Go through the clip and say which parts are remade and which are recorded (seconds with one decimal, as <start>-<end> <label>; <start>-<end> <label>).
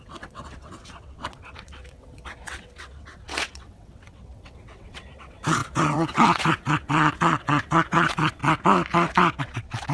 0.0-8.4 remade; 8.4-9.4 recorded; 9.4-9.9 remade